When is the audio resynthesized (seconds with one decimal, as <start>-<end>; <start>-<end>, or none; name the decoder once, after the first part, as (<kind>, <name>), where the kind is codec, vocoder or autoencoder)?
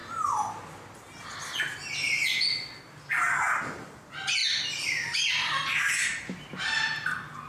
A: none